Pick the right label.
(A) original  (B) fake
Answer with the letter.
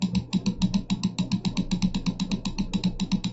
A